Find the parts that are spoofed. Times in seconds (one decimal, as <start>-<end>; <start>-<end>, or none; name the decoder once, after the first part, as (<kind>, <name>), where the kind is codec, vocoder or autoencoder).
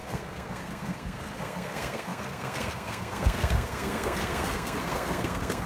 0.0-5.7 (codec, SNAC)